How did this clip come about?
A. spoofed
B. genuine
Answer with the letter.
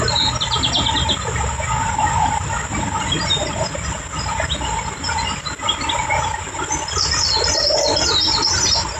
B